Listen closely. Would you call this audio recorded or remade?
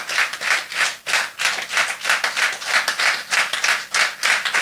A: recorded